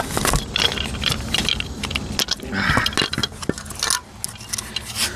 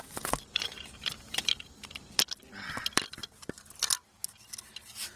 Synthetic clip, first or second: second